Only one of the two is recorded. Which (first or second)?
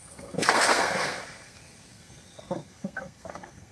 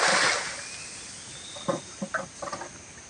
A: second